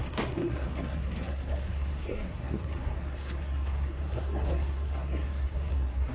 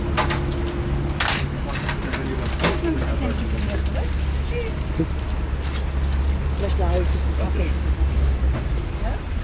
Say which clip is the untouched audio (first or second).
second